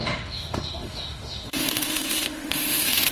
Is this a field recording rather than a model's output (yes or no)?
no